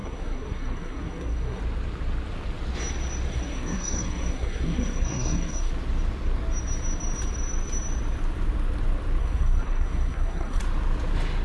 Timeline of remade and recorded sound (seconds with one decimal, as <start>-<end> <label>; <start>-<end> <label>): 0.0-1.6 remade; 1.6-3.3 recorded; 3.3-5.7 remade; 5.7-9.2 recorded; 9.2-10.6 remade; 10.6-11.4 recorded